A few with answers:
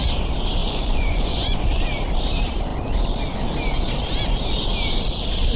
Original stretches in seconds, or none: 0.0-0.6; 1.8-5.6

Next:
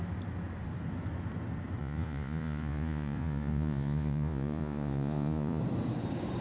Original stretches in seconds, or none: 0.0-1.8; 5.6-6.4